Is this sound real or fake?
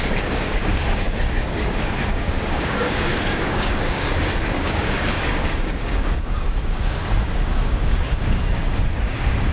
fake